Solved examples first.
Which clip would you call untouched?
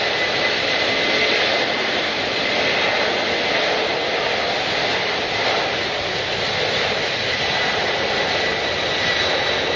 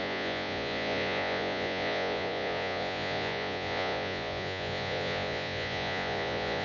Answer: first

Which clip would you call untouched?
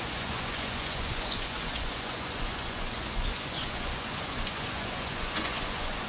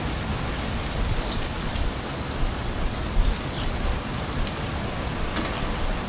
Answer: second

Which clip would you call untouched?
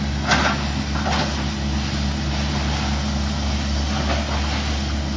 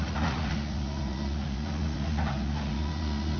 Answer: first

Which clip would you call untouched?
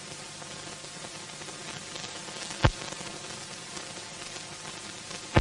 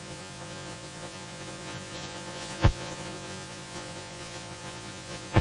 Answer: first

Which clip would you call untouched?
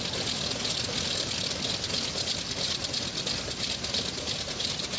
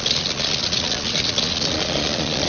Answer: first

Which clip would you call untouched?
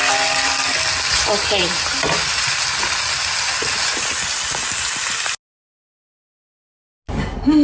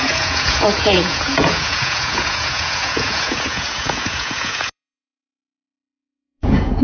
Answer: first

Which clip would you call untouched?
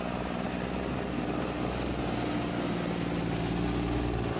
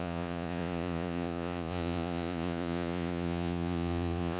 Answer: first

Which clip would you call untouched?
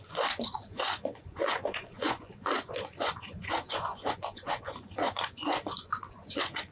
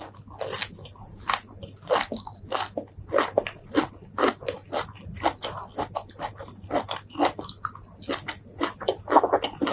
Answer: second